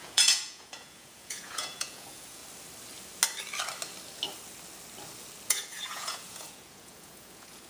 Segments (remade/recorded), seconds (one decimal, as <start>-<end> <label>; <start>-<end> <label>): 0.0-2.4 remade; 2.4-5.5 recorded; 5.5-7.7 remade